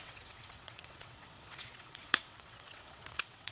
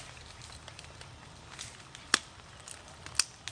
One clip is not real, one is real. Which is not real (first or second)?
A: first